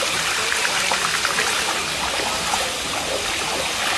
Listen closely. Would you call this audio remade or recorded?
recorded